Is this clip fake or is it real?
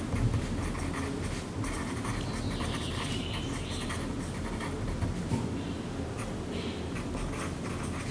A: real